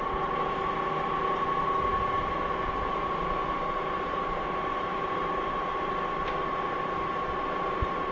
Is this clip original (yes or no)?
yes